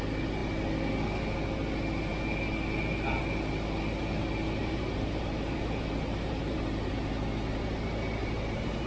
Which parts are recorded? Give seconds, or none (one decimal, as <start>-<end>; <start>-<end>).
0.0-4.6; 7.1-8.2